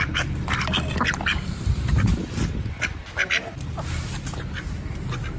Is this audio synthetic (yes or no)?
no